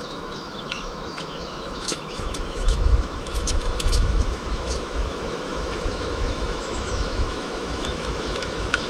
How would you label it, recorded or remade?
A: remade